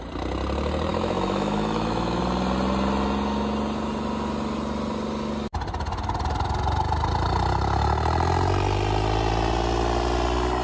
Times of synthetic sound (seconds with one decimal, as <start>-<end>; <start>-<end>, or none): 0.9-2.2